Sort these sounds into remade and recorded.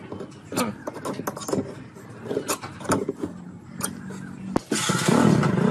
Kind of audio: recorded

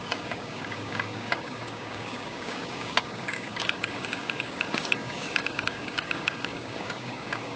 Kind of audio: remade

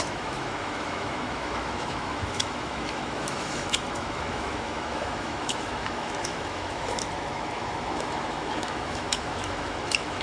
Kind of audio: remade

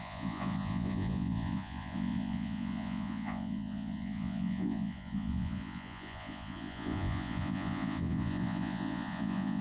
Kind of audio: remade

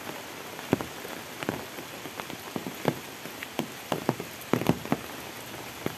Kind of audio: recorded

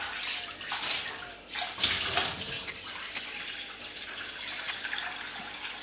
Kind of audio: recorded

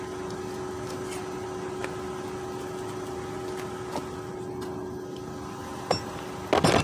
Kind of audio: recorded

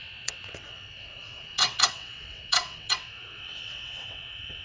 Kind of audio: remade